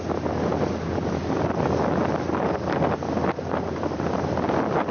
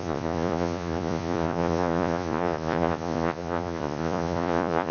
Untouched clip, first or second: first